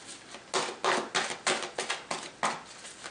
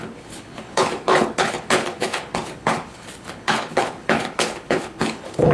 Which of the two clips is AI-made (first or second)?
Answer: second